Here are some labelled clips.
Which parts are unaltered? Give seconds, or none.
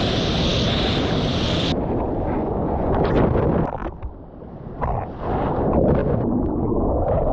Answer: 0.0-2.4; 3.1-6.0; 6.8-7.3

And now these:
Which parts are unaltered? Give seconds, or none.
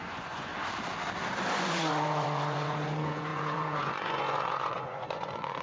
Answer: 0.5-1.5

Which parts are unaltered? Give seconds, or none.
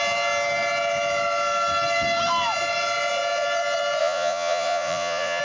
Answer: 0.0-4.0